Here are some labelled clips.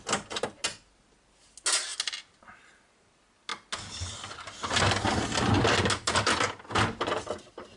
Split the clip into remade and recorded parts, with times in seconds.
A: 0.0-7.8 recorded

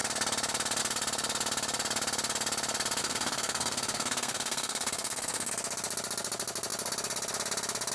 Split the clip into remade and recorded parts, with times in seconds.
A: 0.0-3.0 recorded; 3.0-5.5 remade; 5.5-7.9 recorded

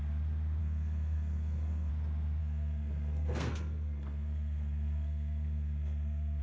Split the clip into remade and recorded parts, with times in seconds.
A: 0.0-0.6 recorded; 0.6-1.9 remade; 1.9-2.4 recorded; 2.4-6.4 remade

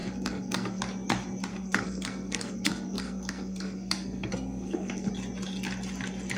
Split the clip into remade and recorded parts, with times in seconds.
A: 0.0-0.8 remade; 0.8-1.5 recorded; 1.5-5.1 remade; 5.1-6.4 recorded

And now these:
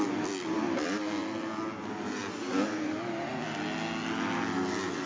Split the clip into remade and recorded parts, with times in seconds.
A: 0.0-5.1 recorded